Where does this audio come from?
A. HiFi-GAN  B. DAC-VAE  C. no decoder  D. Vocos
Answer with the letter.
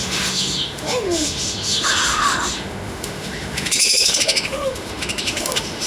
B